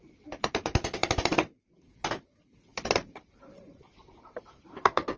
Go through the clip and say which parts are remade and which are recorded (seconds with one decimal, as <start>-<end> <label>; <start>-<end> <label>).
0.0-1.0 recorded; 1.0-1.8 remade; 1.8-2.7 recorded; 2.7-5.2 remade

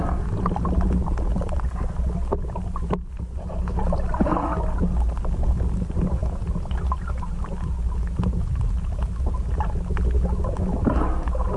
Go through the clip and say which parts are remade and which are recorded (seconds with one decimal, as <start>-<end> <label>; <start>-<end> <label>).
0.0-6.2 recorded; 6.2-7.4 remade; 7.4-11.6 recorded

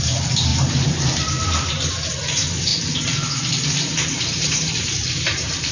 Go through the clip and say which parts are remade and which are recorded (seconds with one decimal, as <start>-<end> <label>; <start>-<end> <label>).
0.0-2.7 remade; 2.7-3.3 recorded; 3.3-5.7 remade

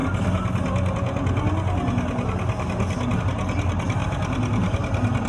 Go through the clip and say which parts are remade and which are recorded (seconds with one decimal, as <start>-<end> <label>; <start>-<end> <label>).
0.0-4.0 recorded; 4.0-5.3 remade

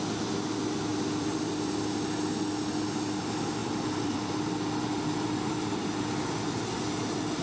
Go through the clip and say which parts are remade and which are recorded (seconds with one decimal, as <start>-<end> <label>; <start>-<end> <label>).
0.0-0.9 recorded; 0.9-1.5 remade; 1.5-3.6 recorded; 3.6-6.0 remade; 6.0-7.4 recorded

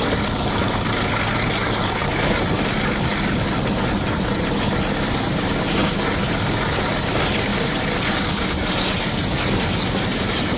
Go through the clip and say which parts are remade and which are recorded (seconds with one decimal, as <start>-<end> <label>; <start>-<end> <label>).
0.0-2.0 recorded; 2.0-2.8 remade; 2.8-10.6 recorded

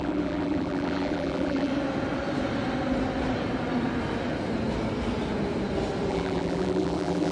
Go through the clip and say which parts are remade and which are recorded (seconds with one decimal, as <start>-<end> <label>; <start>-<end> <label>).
0.0-1.7 remade; 1.7-6.1 recorded; 6.1-7.3 remade

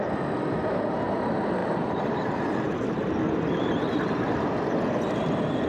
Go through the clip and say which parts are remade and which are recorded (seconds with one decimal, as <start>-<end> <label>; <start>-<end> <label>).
0.0-1.6 recorded; 1.6-2.9 remade; 2.9-5.7 recorded